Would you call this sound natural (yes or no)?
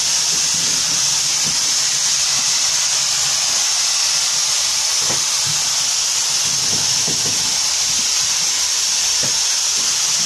yes